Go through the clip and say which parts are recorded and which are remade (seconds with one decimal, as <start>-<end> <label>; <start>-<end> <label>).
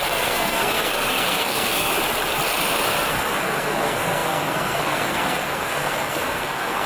0.0-1.9 remade; 1.9-3.1 recorded; 3.1-6.9 remade